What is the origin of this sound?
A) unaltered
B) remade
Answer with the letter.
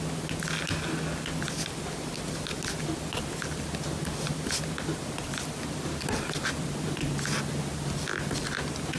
A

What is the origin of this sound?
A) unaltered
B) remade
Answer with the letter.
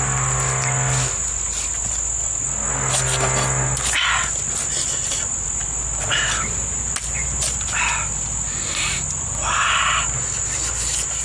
A